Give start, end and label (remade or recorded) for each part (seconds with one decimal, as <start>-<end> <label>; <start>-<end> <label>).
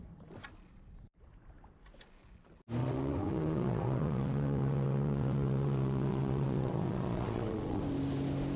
0.0-2.8 recorded; 2.8-7.8 remade; 7.8-8.6 recorded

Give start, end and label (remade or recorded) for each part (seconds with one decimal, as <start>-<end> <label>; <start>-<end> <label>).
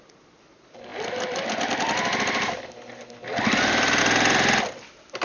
0.0-5.2 recorded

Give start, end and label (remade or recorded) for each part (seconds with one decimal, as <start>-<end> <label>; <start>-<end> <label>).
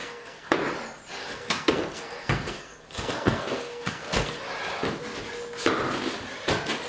0.0-0.6 remade; 0.6-1.2 recorded; 1.2-4.3 remade; 4.3-6.9 recorded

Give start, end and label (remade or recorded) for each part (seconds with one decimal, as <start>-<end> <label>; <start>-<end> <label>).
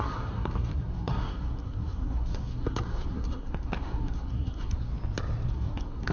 0.0-4.9 remade; 4.9-5.5 recorded; 5.5-6.1 remade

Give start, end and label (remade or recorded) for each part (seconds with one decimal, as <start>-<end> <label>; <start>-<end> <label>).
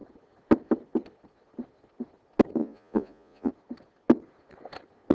0.0-2.6 recorded; 2.6-3.5 remade; 3.5-5.1 recorded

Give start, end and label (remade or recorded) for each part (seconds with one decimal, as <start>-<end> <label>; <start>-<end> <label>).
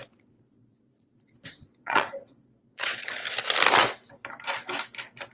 0.0-3.2 remade; 3.2-5.3 recorded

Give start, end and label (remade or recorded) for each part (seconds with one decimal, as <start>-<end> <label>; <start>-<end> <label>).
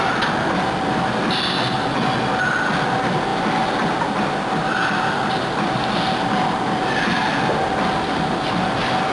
0.0-9.1 recorded